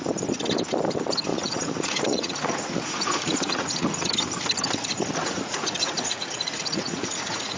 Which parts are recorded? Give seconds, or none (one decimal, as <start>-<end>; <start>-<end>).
0.0-1.3; 4.1-5.2